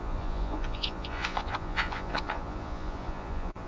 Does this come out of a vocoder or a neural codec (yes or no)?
yes